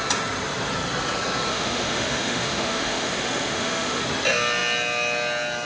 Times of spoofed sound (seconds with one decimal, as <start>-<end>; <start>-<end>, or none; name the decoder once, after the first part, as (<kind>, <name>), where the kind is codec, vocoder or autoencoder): 1.5-4.0 (autoencoder, DAC-VAE)